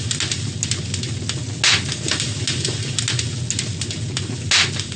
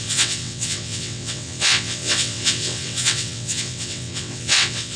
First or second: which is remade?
second